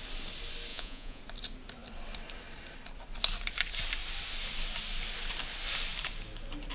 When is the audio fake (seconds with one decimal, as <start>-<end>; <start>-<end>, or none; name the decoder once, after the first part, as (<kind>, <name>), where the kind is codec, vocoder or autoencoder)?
0.7-1.2 (vocoder, Vocos)